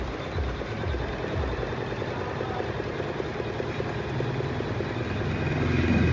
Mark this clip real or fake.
real